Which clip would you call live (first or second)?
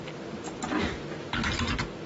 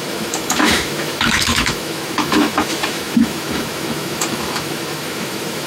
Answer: first